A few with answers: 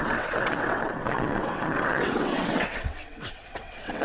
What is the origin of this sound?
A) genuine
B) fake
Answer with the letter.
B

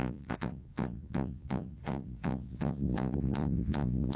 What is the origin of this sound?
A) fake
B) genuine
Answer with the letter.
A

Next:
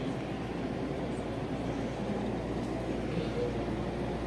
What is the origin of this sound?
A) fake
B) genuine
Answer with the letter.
B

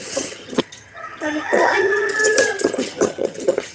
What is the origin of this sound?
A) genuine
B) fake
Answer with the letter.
B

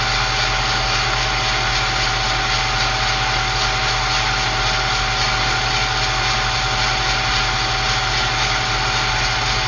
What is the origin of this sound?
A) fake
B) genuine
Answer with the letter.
B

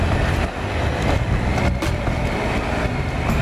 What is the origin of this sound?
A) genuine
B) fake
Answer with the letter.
A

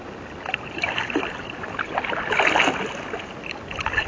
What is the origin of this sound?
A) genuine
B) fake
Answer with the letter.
A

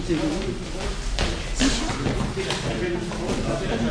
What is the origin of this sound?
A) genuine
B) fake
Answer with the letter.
A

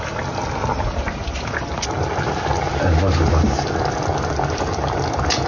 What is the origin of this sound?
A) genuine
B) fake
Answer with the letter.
A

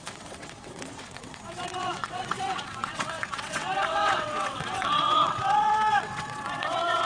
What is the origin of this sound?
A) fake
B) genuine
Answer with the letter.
A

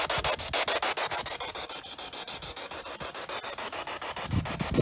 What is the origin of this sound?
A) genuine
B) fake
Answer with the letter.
A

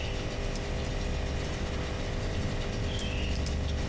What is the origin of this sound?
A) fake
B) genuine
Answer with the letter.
B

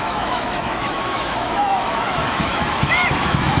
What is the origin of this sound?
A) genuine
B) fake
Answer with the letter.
B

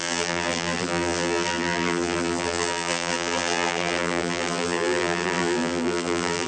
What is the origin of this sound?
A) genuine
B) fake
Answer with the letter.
B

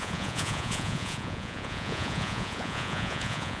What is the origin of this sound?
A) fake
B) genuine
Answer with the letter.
A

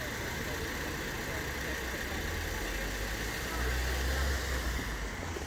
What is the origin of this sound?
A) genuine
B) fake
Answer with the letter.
A